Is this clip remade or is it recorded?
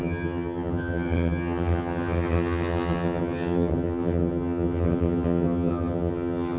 remade